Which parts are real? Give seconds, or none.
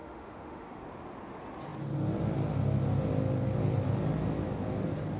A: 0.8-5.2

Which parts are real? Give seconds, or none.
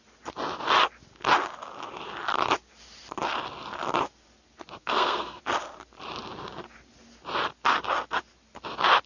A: 0.0-4.8; 5.4-9.1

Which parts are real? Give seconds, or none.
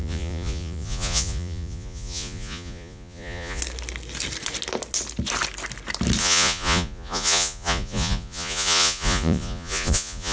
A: 3.6-6.2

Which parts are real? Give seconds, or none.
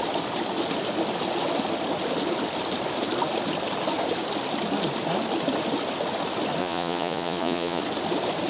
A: 0.0-6.6; 7.8-8.5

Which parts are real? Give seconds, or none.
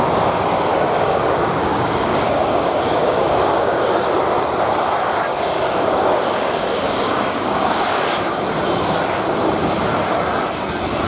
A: 0.0-0.7; 4.2-5.3; 7.8-11.1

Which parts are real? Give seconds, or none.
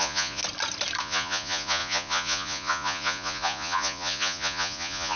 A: 0.4-1.0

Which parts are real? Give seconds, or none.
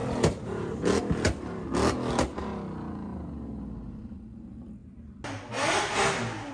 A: 0.0-6.5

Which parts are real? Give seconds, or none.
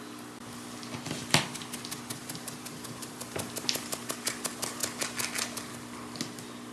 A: 0.0-2.2; 4.1-6.7